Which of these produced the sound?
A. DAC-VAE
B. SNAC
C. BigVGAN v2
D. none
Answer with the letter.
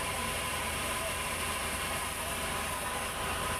C